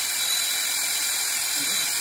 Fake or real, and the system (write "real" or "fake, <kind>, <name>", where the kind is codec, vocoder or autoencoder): real